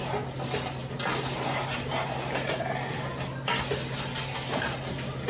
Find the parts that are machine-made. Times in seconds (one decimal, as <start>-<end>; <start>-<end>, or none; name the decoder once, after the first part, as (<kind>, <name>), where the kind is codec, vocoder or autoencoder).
none